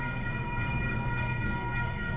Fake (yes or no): yes